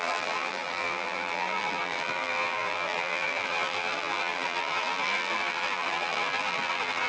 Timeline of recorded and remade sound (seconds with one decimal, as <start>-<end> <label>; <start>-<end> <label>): 0.0-7.1 remade